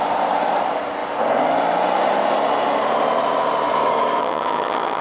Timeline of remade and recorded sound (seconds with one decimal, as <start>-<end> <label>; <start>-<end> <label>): 0.0-4.2 recorded; 4.2-5.0 remade